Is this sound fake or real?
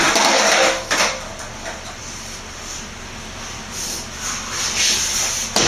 real